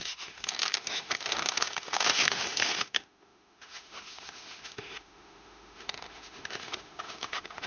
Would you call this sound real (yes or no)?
no